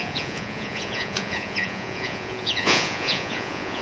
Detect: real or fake fake